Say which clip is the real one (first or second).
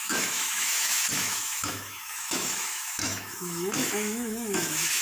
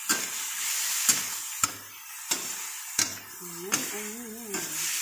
second